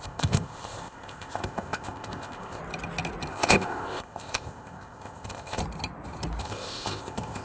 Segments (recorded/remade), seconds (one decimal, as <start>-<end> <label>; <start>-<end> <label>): 0.0-2.6 remade; 2.6-3.3 recorded; 3.3-5.6 remade; 5.6-6.4 recorded; 6.4-7.4 remade